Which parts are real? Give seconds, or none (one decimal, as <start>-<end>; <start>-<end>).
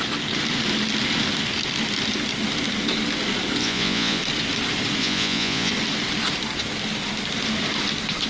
0.0-3.6; 4.2-5.0; 5.7-8.3